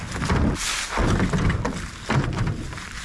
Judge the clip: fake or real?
real